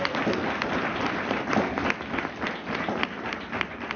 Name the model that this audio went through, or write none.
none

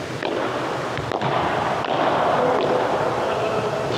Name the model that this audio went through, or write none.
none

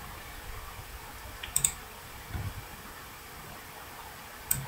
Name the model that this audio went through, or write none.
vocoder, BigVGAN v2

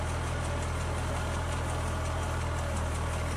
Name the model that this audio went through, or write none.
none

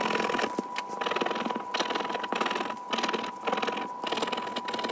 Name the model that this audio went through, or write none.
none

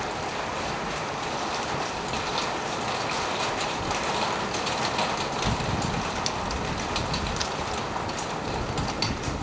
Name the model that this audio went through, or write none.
none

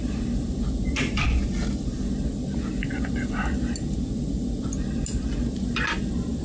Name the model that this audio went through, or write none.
none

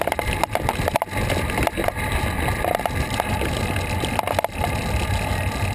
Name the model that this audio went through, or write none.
none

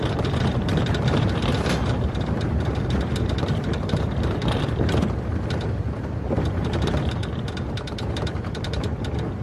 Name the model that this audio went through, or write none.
vocoder, BigVGAN v2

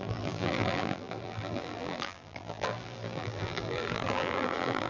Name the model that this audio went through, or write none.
vocoder, BigVGAN v2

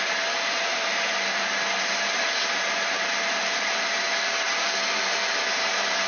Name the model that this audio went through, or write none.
vocoder, BigVGAN v2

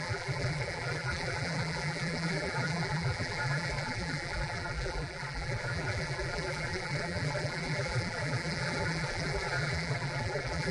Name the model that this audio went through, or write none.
vocoder, BigVGAN v2